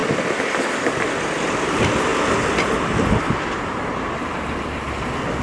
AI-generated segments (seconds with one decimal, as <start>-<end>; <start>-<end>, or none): none